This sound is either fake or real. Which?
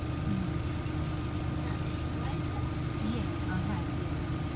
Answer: real